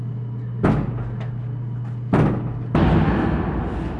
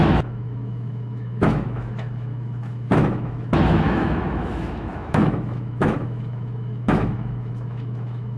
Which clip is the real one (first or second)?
first